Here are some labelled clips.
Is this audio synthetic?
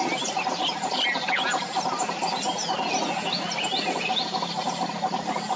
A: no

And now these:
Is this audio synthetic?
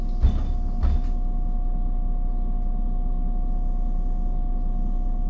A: no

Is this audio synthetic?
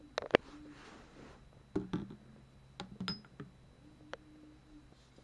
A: no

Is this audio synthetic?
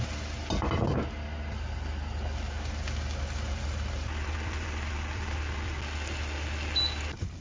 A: no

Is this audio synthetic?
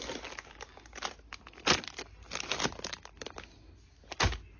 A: no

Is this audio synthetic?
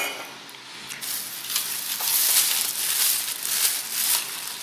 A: no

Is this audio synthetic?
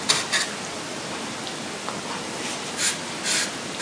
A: no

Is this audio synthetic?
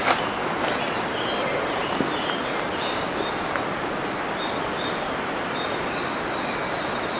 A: no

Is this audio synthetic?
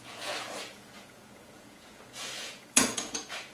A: yes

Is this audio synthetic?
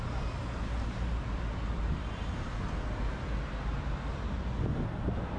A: no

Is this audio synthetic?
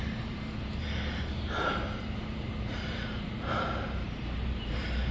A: yes